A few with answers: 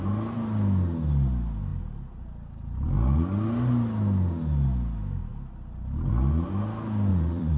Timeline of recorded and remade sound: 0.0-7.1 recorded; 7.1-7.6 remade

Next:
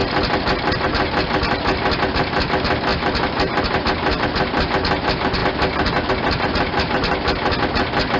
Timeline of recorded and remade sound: 0.0-8.2 recorded

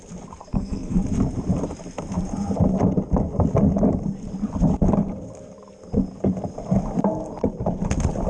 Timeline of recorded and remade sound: 0.0-0.4 recorded; 0.4-1.0 remade; 1.0-8.3 recorded

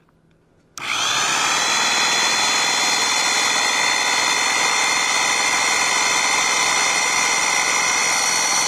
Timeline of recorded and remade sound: 0.0-8.7 recorded